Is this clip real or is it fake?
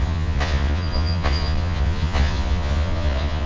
fake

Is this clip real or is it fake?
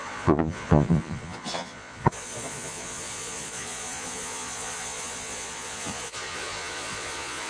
fake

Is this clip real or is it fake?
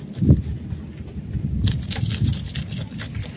real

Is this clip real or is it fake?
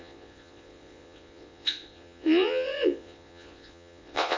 fake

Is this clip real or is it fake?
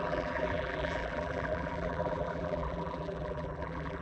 fake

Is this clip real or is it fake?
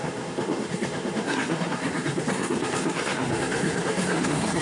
fake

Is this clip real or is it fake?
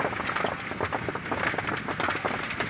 real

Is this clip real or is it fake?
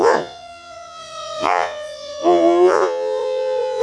fake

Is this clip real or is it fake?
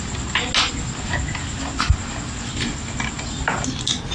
real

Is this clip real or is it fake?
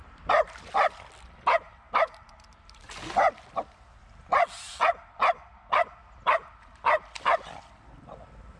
real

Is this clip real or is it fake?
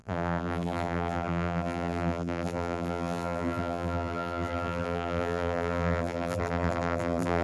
fake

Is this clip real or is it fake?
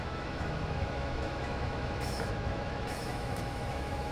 fake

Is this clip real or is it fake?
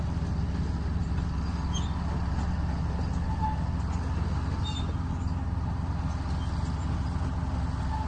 real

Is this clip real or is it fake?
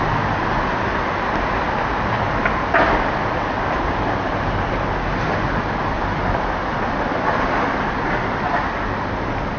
real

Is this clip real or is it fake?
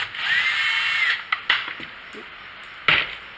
real